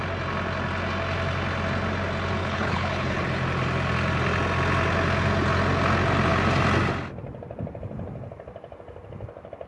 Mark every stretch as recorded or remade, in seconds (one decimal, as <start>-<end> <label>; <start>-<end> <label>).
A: 0.0-2.4 recorded; 2.4-3.2 remade; 3.2-9.7 recorded